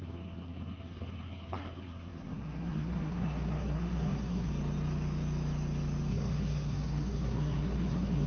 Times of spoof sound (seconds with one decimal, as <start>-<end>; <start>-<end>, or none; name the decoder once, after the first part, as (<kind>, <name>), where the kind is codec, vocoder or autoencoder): 0.0-4.5 (codec, SNAC); 6.1-8.3